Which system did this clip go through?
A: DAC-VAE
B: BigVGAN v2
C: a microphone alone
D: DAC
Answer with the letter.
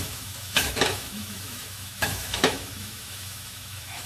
A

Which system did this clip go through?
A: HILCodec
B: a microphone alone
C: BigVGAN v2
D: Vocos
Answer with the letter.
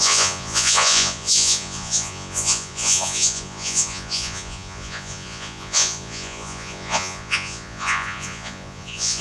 D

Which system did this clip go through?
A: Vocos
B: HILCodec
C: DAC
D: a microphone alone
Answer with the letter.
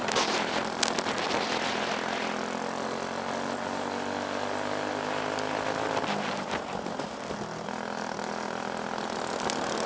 D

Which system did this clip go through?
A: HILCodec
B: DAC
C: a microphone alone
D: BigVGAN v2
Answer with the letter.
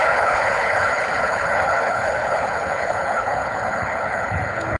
A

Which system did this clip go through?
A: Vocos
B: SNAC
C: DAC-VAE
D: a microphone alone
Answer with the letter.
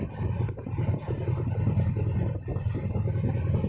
D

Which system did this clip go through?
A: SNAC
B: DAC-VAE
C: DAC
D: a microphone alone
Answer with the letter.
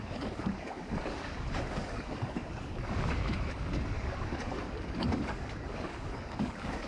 C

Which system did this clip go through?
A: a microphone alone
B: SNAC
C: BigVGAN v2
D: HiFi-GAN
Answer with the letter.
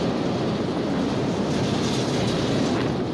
A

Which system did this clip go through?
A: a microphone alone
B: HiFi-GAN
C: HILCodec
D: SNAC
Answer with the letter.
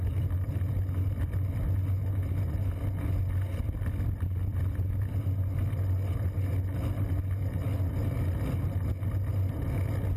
A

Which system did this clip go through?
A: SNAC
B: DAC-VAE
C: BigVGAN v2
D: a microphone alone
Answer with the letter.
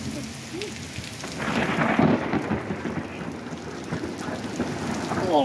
D